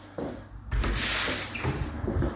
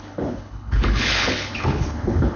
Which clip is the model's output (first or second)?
second